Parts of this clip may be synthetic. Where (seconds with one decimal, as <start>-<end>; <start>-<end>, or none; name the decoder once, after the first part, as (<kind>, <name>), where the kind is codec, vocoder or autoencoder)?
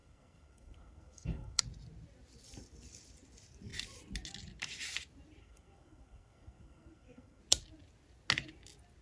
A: 0.0-1.6 (codec, SNAC); 5.4-7.4